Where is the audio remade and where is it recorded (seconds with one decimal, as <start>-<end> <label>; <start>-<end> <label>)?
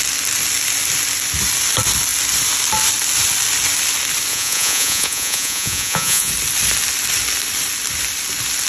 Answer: 0.0-4.3 recorded; 4.3-6.3 remade; 6.3-8.7 recorded